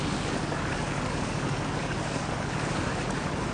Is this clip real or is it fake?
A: fake